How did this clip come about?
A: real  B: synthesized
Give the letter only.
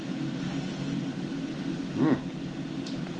A